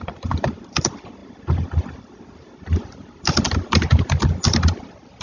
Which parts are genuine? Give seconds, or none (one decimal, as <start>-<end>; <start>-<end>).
0.0-5.2